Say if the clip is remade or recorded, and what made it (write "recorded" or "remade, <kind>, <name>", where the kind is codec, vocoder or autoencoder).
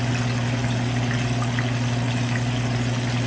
recorded